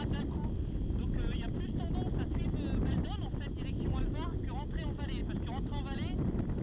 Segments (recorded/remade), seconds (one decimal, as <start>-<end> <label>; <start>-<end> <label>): 0.0-6.6 recorded

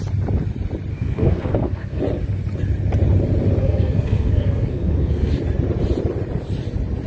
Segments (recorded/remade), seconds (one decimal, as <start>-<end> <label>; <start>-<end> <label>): 0.0-0.9 recorded; 0.9-2.0 remade; 2.0-3.6 recorded; 3.6-5.3 remade; 5.3-7.1 recorded

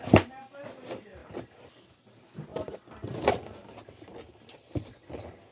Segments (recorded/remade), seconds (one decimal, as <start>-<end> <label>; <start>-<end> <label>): 0.0-2.5 recorded; 2.5-3.4 remade; 3.4-5.5 recorded

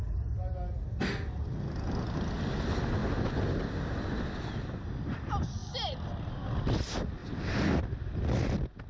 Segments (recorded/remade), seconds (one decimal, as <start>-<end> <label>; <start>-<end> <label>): 0.0-8.9 recorded